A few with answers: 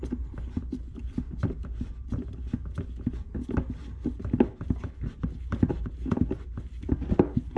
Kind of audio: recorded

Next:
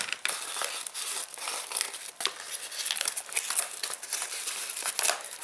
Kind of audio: recorded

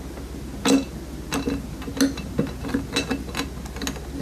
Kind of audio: recorded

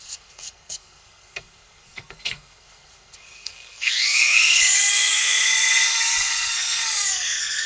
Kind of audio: remade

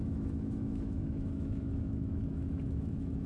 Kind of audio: remade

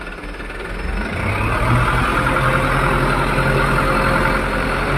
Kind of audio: recorded